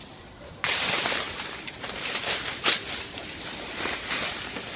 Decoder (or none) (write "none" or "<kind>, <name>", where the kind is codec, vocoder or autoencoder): none